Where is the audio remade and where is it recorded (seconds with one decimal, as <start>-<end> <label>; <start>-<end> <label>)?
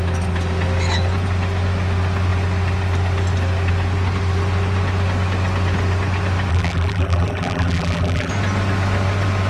0.0-6.5 recorded; 6.5-8.3 remade; 8.3-9.5 recorded